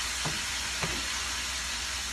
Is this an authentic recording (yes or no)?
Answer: no